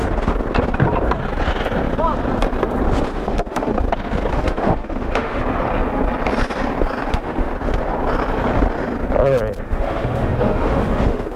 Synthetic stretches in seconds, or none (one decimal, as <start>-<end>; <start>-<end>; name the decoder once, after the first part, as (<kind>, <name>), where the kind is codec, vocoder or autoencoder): 3.1-3.7 (autoencoder, DAC-VAE); 4.3-5.4; 7.1-7.5; 9.6-11.4